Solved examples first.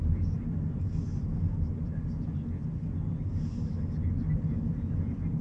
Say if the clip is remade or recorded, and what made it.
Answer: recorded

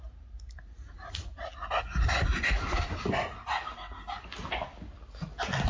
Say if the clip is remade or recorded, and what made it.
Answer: recorded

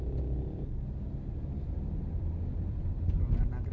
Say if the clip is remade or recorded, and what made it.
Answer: recorded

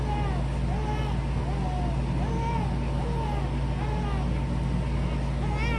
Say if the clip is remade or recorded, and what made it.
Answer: recorded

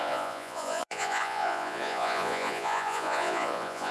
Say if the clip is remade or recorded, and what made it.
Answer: remade, vocoder, Vocos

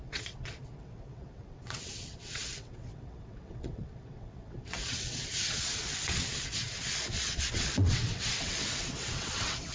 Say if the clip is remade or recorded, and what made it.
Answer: remade, vocoder, WaveNeXt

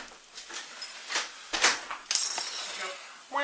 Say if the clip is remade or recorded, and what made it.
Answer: recorded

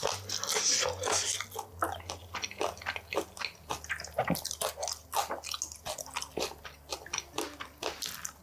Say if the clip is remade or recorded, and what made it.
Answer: recorded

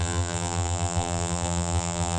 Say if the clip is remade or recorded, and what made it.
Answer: remade, vocoder, BigVGAN v2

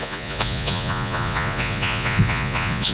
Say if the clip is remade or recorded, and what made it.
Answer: remade, vocoder, Vocos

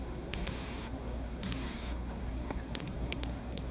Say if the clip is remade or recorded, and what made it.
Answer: remade, codec, SNAC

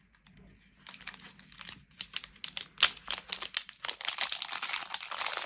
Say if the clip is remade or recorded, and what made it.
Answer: recorded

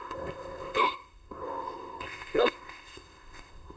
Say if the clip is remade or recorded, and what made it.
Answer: remade, codec, ZipCodec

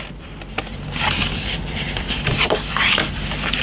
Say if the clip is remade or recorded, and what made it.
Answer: remade, vocoder, BigVGAN v2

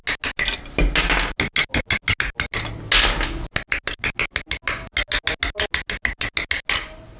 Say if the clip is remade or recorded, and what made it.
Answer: recorded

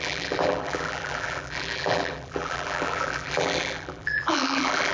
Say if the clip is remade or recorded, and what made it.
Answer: remade, vocoder, BigVGAN v2